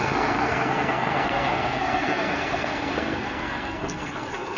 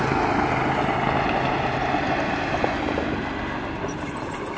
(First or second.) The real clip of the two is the second